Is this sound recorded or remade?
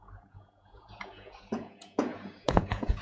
remade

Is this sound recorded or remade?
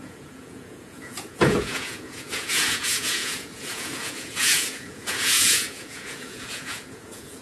remade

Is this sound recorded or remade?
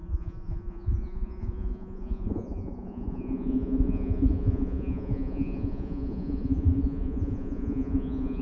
remade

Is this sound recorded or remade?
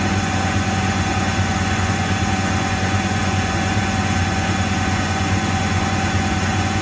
remade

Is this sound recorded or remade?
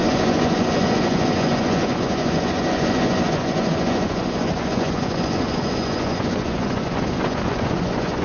remade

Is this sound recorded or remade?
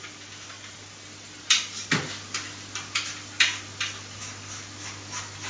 recorded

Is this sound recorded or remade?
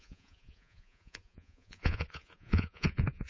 remade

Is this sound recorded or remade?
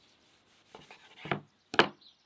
recorded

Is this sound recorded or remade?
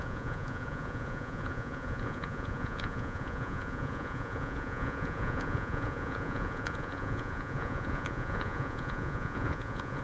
remade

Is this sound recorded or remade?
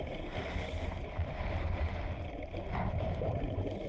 recorded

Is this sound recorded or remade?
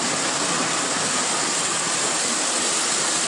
recorded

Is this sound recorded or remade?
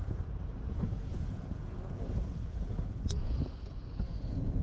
remade